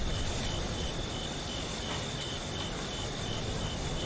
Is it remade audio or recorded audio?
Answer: recorded